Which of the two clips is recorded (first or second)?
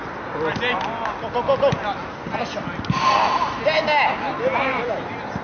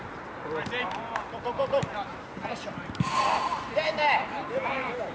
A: first